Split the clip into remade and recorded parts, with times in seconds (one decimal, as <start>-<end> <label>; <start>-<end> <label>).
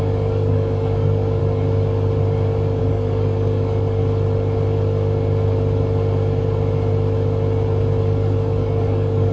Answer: 0.0-1.4 remade; 1.4-2.8 recorded; 2.8-4.0 remade; 4.0-8.0 recorded; 8.0-9.3 remade